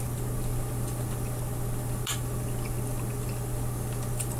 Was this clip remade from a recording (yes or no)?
no